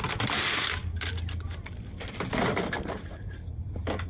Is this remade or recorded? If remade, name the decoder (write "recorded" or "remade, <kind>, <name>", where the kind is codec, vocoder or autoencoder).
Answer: remade, vocoder, BigVGAN v2